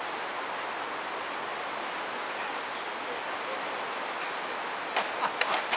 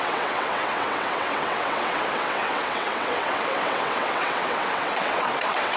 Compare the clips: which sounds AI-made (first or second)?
second